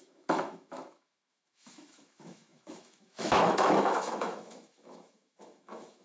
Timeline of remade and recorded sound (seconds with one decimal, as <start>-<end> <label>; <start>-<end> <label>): 0.0-6.0 remade